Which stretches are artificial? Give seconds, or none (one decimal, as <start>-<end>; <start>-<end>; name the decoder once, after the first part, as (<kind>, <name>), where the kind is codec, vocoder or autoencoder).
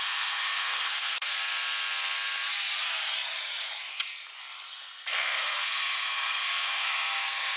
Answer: 0.0-1.3 (codec, SNAC); 5.1-7.6